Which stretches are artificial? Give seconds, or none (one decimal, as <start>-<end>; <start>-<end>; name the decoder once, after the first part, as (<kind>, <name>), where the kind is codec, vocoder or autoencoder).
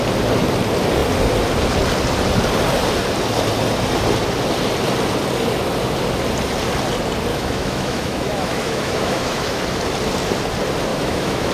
7.3-9.6 (autoencoder, DAC-VAE); 10.9-11.5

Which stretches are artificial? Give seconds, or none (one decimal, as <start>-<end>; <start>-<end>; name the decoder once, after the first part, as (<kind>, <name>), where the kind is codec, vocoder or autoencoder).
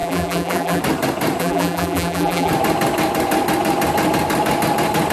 0.0-0.8 (vocoder, BigVGAN v2); 1.4-2.5